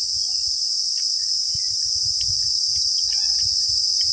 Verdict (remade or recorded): recorded